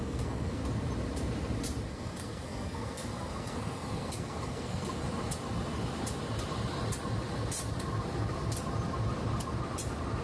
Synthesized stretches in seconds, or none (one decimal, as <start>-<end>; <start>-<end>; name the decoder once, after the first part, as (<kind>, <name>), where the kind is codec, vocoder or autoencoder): 0.0-0.6 (codec, SNAC); 1.9-5.0